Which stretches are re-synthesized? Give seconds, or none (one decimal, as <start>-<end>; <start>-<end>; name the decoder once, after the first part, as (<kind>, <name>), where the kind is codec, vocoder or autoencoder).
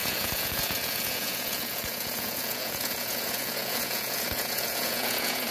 0.0-5.5 (vocoder, Vocos)